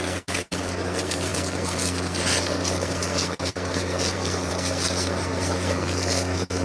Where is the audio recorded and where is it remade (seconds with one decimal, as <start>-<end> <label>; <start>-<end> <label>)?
0.0-6.6 remade